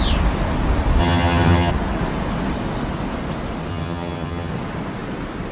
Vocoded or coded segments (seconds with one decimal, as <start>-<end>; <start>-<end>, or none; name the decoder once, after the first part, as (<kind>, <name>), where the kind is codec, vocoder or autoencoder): 1.0-1.7 (vocoder, HiFi-GAN); 3.7-4.5